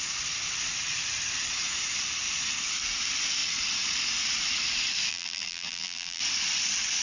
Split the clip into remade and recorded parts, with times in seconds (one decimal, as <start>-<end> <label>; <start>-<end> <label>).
0.0-5.1 recorded; 5.1-6.2 remade; 6.2-7.0 recorded